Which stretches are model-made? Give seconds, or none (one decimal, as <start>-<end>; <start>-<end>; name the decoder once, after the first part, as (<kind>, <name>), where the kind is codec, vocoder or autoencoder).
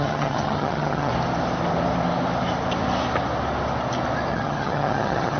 0.0-1.1 (vocoder, HiFi-GAN); 4.3-5.4